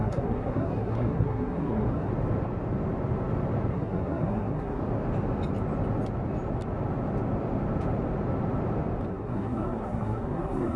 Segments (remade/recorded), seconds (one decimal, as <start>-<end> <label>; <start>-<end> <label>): 0.0-2.1 remade; 2.1-3.7 recorded; 3.7-4.8 remade; 4.8-9.1 recorded; 9.1-10.8 remade